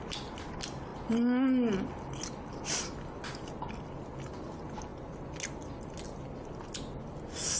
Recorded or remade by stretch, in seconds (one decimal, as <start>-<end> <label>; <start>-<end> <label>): 0.0-7.6 recorded